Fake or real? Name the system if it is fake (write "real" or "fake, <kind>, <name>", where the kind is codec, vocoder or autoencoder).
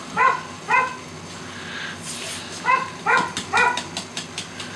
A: real